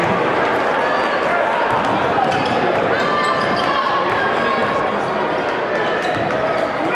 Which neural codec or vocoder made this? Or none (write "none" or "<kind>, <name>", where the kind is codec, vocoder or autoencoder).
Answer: none